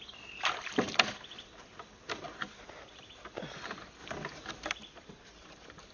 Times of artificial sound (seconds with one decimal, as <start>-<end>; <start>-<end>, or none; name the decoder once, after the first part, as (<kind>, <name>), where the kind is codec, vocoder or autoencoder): 0.0-1.7 (vocoder, BigVGAN v2); 2.4-5.9